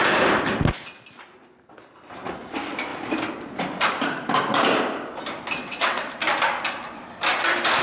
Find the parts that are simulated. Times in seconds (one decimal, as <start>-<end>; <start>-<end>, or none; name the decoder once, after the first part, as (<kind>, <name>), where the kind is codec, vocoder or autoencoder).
5.6-6.2 (vocoder, WaveNeXt)